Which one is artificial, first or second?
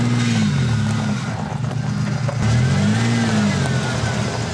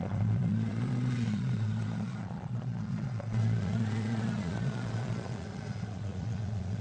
second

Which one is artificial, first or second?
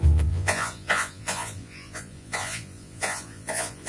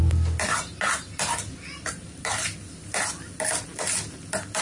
first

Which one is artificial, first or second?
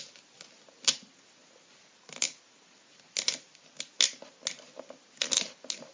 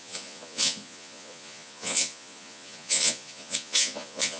second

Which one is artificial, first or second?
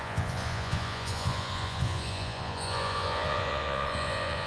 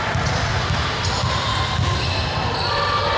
first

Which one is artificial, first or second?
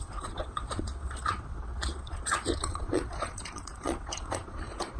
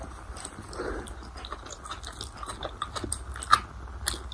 first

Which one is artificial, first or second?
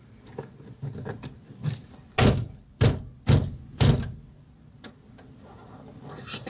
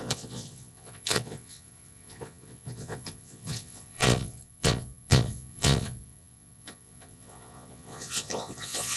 second